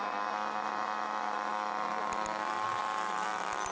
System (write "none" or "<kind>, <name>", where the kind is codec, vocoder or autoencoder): none